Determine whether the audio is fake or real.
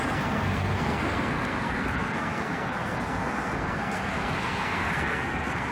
fake